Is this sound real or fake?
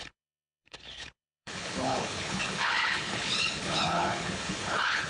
fake